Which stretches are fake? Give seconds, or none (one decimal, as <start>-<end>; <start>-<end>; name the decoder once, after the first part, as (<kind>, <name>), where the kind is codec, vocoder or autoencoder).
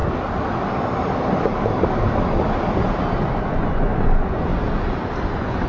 3.4-4.5 (vocoder, Vocos); 5.2-5.7